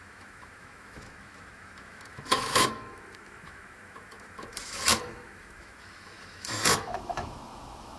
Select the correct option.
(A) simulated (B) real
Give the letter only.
A